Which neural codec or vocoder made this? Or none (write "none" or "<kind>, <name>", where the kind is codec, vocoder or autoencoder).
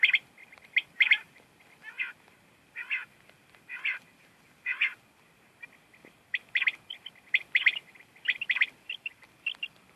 none